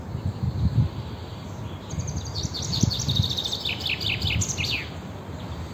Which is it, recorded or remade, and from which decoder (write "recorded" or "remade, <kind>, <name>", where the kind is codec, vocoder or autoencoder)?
recorded